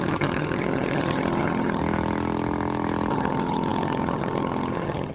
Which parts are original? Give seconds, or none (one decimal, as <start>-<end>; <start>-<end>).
1.8-3.1